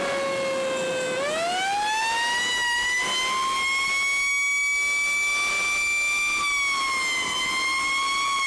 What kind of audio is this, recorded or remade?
recorded